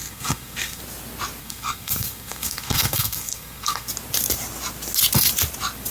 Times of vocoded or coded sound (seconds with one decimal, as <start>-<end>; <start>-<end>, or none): 0.0-0.8; 1.4-3.9